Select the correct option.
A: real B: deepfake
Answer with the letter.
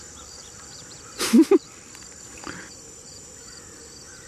B